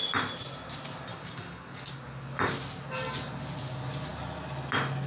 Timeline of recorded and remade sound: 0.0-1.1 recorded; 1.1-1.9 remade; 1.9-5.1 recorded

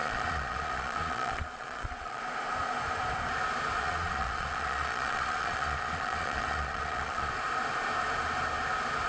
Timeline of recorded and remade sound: 0.0-2.2 remade; 2.2-3.8 recorded; 3.8-7.3 remade; 7.3-9.1 recorded

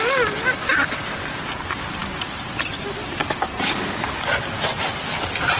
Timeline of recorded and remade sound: 0.0-5.6 recorded

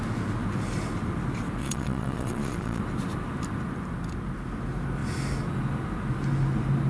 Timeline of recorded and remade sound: 0.0-1.6 recorded; 1.6-2.8 remade; 2.8-6.9 recorded

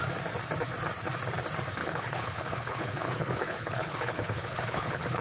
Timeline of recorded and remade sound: 0.0-1.8 recorded; 1.8-5.2 remade

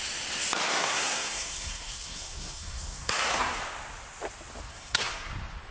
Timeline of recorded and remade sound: 0.0-0.7 recorded; 0.7-3.6 remade; 3.6-4.7 recorded; 4.7-5.3 remade; 5.3-5.7 recorded

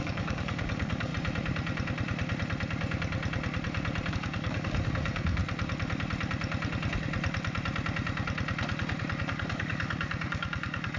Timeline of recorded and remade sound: 0.0-1.1 remade; 1.1-4.1 recorded; 4.1-5.4 remade; 5.4-9.2 recorded; 9.2-11.0 remade

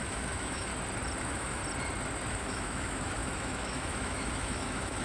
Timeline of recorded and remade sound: 0.0-0.7 remade; 0.7-1.2 recorded; 1.2-1.6 remade; 1.6-2.3 recorded; 2.3-5.0 remade